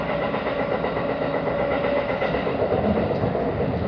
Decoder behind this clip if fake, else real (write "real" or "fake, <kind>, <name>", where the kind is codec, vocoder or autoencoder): real